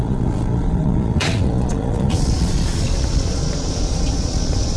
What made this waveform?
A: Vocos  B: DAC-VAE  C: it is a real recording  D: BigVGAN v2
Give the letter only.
A